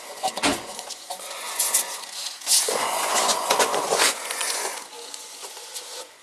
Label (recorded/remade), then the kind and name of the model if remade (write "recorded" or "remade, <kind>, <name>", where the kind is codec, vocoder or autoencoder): remade, vocoder, Vocos